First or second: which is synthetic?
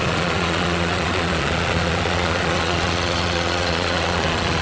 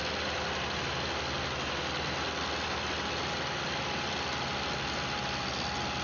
first